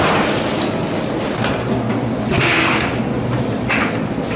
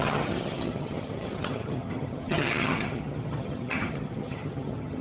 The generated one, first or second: second